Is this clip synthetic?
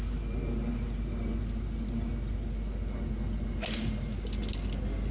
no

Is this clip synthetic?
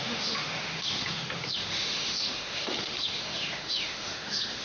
yes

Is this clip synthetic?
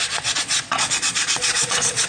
yes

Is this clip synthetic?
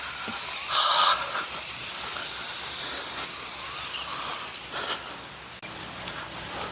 no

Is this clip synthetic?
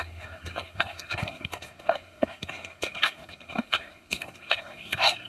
yes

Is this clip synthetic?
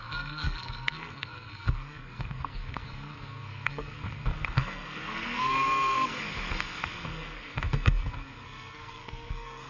yes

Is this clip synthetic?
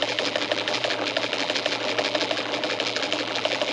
yes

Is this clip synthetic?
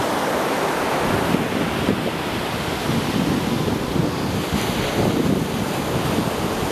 no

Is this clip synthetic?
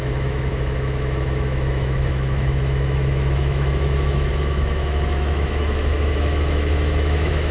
yes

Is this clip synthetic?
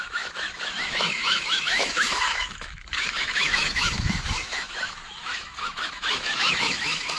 yes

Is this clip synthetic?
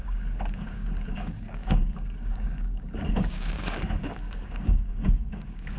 yes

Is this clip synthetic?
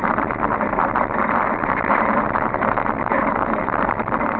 yes